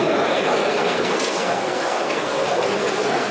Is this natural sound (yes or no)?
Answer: no